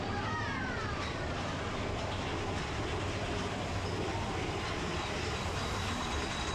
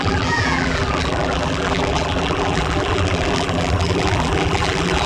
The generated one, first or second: second